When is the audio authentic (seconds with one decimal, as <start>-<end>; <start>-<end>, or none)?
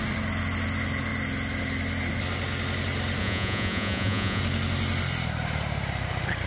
0.0-3.2; 4.4-6.5